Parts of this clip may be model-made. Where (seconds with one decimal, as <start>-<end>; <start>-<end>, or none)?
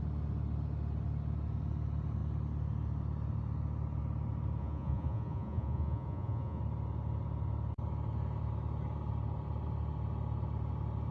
4.6-6.6